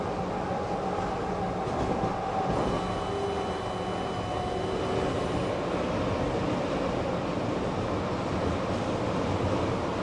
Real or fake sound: real